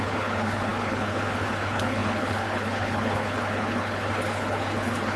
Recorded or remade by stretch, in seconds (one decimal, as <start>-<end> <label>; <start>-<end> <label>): 0.0-5.2 remade

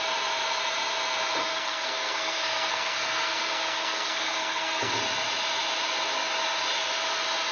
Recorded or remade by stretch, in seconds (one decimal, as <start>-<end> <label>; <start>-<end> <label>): 0.0-1.5 recorded; 1.5-4.9 remade; 4.9-7.5 recorded

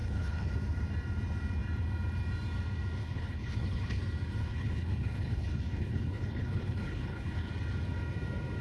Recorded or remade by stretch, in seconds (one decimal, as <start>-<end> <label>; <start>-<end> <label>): 0.0-0.5 remade; 0.5-3.0 recorded; 3.0-4.0 remade; 4.0-4.4 recorded; 4.4-7.5 remade; 7.5-8.6 recorded

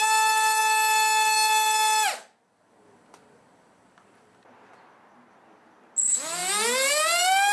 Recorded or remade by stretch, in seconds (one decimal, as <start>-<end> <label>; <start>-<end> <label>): 0.0-7.5 recorded

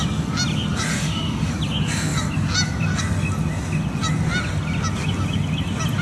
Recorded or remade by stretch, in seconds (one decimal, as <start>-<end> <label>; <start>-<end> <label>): 0.0-0.9 recorded; 0.9-1.5 remade; 1.5-6.0 recorded